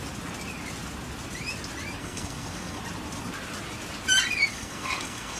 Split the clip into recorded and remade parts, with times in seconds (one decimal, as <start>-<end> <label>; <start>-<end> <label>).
0.0-2.0 recorded; 2.0-2.8 remade; 2.8-4.5 recorded; 4.5-5.4 remade